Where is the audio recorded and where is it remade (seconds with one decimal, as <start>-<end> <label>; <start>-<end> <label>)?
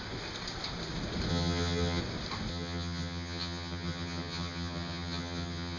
0.0-1.3 recorded; 1.3-2.0 remade; 2.0-2.5 recorded; 2.5-5.8 remade